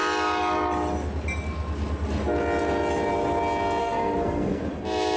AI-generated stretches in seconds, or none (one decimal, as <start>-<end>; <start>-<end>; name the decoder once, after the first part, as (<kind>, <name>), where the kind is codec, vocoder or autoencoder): 3.8-4.6 (codec, SNAC)